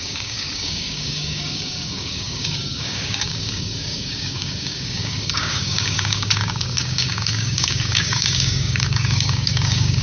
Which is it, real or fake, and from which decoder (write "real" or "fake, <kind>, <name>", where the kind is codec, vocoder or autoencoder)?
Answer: fake, codec, DAC